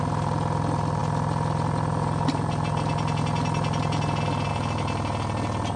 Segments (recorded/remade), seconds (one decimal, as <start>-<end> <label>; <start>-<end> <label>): 0.0-5.8 recorded